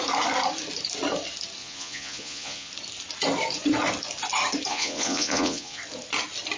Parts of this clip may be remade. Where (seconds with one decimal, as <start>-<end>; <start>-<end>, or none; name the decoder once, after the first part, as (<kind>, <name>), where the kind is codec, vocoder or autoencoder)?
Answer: 1.6-2.7 (vocoder, Vocos); 4.7-5.8